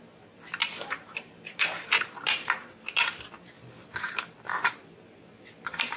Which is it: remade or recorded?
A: remade